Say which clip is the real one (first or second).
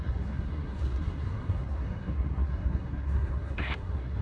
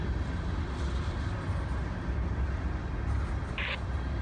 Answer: second